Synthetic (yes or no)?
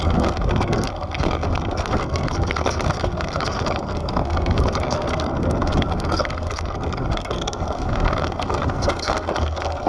yes